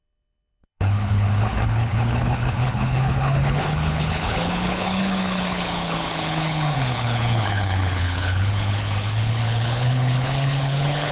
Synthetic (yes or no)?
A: yes